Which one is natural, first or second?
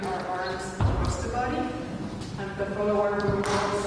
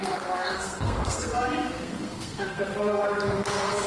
first